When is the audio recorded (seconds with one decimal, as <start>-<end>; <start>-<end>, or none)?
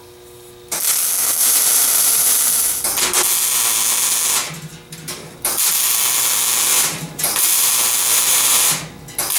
0.0-1.4; 2.8-6.7; 7.7-8.1; 8.7-9.4